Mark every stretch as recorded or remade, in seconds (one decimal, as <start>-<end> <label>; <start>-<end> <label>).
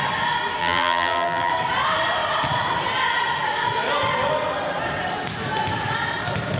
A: 0.0-0.6 recorded; 0.6-1.5 remade; 1.5-6.6 recorded